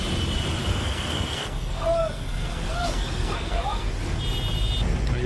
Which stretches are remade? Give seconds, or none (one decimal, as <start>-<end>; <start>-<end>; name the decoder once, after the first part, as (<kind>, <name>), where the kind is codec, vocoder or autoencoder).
0.7-3.9 (codec, SNAC)